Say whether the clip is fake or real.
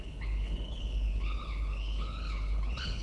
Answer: fake